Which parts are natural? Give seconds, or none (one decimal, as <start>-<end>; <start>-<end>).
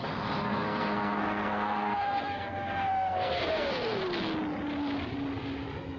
0.0-0.4; 4.0-6.0